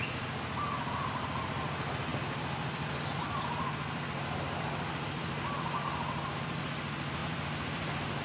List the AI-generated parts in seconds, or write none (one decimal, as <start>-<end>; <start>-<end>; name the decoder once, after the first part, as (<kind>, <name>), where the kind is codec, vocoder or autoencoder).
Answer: 7.2-8.2 (vocoder, BigVGAN v2)